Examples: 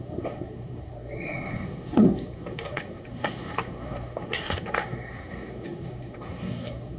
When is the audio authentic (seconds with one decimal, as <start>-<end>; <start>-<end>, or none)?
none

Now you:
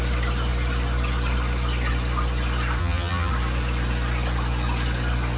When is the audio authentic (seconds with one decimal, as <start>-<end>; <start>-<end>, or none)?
0.0-2.8; 3.3-5.4

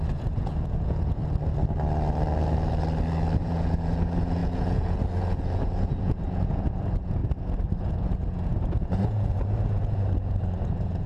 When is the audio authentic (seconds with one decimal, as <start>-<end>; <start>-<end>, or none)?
1.2-3.4; 7.2-7.8

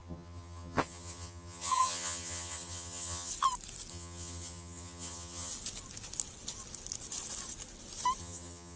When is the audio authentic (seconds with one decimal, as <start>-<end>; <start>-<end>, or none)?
3.3-3.9; 5.5-8.2

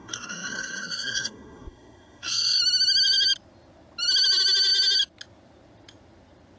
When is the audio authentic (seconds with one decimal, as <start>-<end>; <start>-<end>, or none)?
2.6-6.6

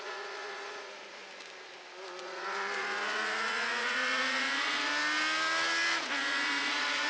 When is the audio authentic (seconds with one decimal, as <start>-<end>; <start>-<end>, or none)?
1.2-2.2; 4.9-5.9

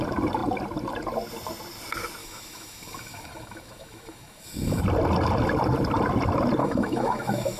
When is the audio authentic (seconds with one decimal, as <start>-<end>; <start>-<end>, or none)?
0.0-2.2; 4.8-6.6

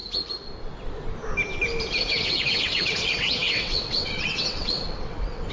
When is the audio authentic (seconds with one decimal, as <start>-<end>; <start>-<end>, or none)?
0.0-2.1